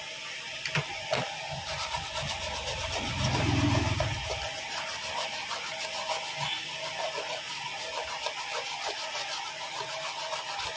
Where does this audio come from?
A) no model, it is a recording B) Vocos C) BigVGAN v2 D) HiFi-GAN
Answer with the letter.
A